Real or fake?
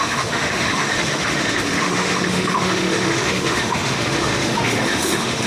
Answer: fake